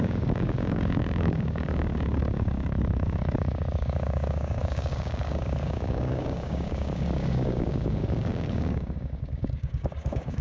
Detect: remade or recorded remade